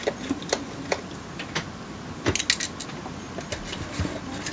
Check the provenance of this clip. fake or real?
real